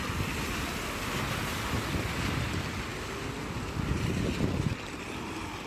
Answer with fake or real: real